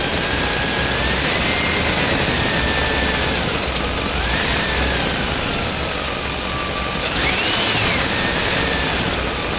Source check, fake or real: real